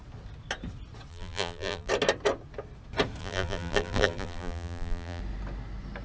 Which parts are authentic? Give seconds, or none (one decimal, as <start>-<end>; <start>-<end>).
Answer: 0.0-1.1; 1.9-3.2; 5.2-6.0